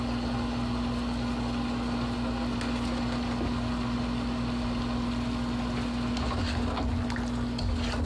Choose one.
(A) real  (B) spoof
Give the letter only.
A